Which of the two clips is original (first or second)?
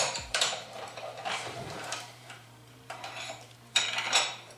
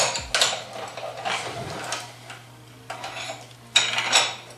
second